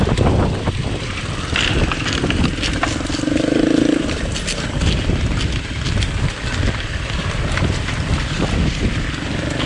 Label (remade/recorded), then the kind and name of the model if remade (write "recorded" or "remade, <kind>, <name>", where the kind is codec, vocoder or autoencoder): recorded